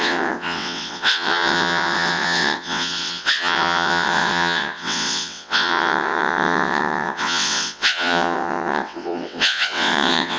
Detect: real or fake fake